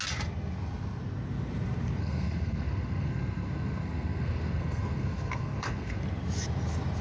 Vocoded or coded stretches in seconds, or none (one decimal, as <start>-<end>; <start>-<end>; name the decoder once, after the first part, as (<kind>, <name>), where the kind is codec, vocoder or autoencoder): 2.0-6.0 (codec, SNAC)